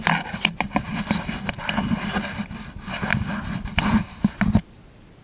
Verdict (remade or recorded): recorded